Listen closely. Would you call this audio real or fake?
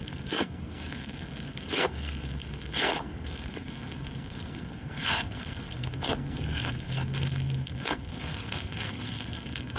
fake